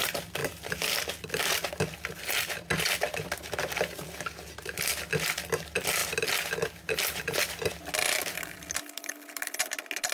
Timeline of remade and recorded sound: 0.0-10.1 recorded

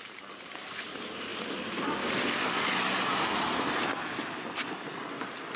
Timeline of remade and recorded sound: 0.0-5.6 recorded

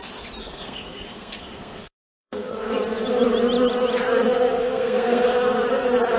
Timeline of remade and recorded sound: 0.0-0.4 recorded; 0.4-2.7 remade; 2.7-4.6 recorded; 4.6-5.3 remade; 5.3-6.2 recorded

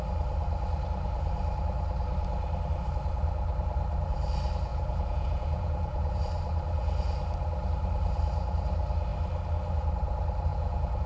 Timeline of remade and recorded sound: 0.0-4.7 recorded; 4.7-6.2 remade; 6.2-10.5 recorded; 10.5-11.1 remade

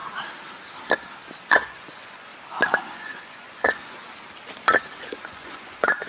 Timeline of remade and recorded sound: 0.0-1.5 recorded; 1.5-2.3 remade; 2.3-2.8 recorded; 2.8-4.0 remade; 4.0-4.9 recorded; 4.9-6.1 remade

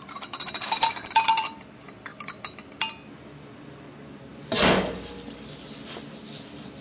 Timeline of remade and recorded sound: 0.0-2.1 recorded; 2.1-2.9 remade; 2.9-6.8 recorded

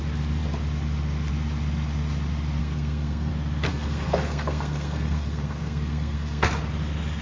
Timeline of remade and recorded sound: 0.0-2.6 recorded; 2.6-3.3 remade; 3.3-3.7 recorded; 3.7-6.5 remade; 6.5-7.2 recorded